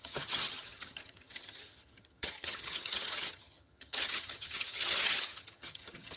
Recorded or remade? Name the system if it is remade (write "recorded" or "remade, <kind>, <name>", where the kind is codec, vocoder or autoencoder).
remade, vocoder, HiFi-GAN